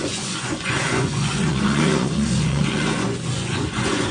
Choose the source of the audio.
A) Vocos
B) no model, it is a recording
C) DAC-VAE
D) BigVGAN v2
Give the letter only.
A